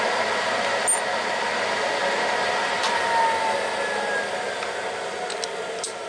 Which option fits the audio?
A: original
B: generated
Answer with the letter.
A